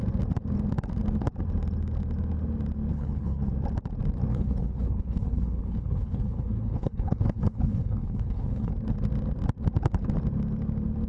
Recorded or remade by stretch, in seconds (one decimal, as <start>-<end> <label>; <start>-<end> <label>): 0.0-2.9 recorded; 2.9-3.5 remade; 3.5-4.3 recorded; 4.3-8.7 remade; 8.7-11.1 recorded